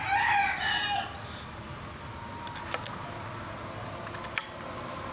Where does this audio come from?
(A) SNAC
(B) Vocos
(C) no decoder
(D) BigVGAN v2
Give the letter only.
C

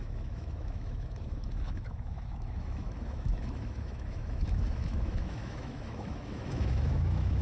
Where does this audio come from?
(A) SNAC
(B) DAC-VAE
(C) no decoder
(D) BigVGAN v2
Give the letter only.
B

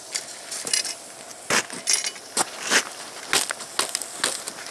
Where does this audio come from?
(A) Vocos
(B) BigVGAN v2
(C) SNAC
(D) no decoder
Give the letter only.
D